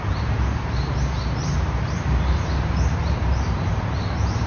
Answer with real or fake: fake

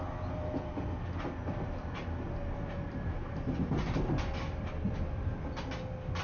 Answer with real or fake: real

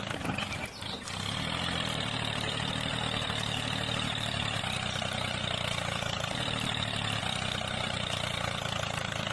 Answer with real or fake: fake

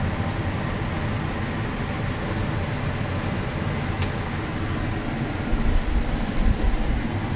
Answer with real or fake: real